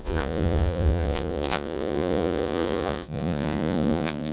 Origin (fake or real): fake